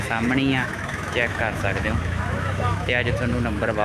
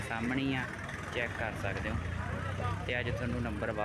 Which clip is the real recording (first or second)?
second